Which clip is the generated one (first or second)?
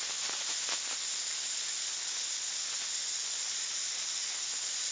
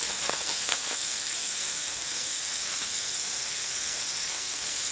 second